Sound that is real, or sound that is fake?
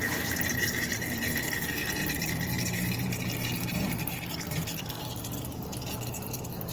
fake